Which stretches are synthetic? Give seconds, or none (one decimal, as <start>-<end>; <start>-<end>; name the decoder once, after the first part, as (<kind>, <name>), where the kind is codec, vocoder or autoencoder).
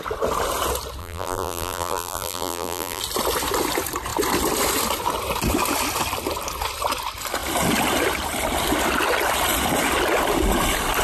1.0-3.0 (vocoder, BigVGAN v2)